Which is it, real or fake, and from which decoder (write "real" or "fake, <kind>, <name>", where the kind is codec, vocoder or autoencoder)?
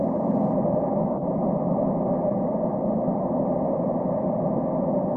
fake, vocoder, BigVGAN v2